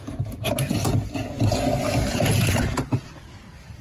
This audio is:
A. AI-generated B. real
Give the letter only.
B